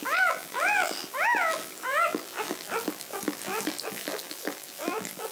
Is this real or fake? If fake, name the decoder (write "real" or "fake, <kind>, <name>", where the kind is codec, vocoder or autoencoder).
fake, vocoder, BigVGAN v2